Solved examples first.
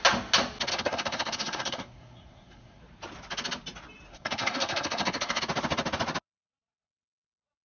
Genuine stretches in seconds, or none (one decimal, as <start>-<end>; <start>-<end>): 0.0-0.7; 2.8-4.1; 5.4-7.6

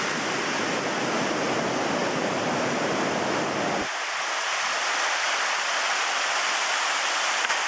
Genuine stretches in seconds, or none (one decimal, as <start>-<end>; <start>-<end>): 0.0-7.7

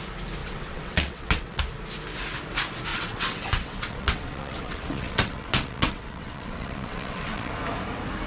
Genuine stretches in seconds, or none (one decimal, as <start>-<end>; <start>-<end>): 0.0-0.4; 1.6-2.9; 7.5-8.3